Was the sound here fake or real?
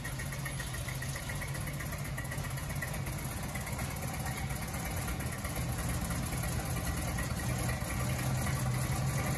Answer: real